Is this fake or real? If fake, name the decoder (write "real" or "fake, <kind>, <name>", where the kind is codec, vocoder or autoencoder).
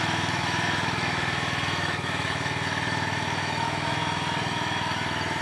fake, autoencoder, DAC-VAE